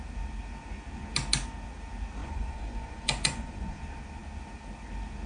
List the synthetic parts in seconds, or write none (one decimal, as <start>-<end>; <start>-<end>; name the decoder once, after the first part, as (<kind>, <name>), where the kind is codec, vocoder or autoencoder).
2.2-3.8 (vocoder, Vocos)